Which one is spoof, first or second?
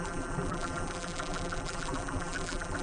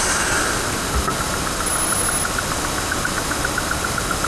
first